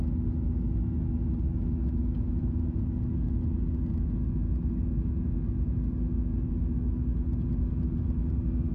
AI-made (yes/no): no